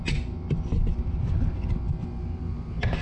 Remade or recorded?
recorded